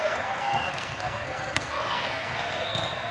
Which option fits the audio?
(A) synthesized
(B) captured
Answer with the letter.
A